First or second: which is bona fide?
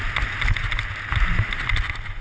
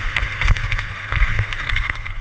first